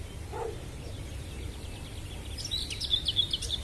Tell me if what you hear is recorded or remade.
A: recorded